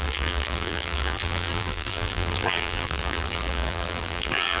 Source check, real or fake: fake